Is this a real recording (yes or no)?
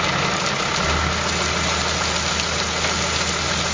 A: yes